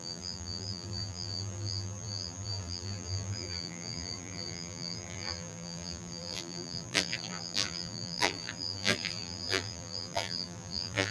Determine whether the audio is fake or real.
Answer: fake